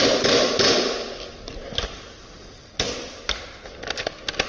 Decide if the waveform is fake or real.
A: real